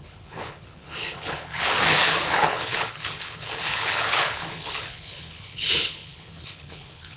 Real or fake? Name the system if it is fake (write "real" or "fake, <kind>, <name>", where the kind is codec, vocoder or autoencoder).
fake, codec, HILCodec